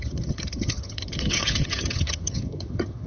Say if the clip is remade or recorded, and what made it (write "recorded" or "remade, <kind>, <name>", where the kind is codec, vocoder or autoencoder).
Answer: remade, vocoder, HiFi-GAN